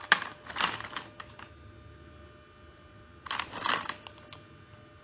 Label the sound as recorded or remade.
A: recorded